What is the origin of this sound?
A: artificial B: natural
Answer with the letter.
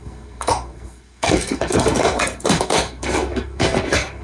A